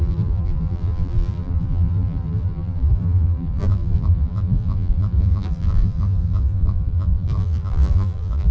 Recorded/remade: remade